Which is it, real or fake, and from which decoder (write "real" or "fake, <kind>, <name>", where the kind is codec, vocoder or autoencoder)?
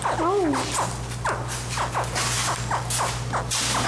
real